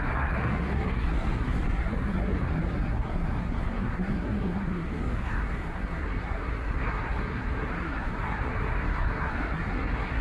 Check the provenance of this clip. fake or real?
fake